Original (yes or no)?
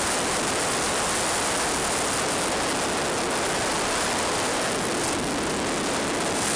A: yes